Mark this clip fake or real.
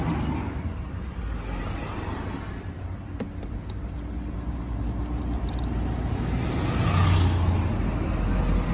real